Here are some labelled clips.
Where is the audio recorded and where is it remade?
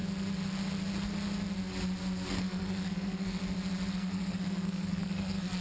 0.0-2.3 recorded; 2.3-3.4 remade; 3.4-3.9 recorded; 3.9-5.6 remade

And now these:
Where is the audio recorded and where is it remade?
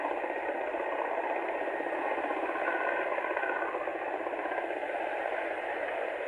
0.0-6.3 recorded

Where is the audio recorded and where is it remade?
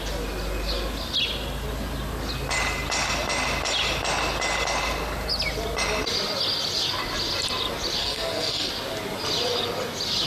0.0-8.0 recorded; 8.0-8.7 remade; 8.7-10.3 recorded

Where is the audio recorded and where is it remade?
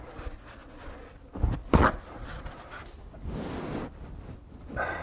0.0-5.0 recorded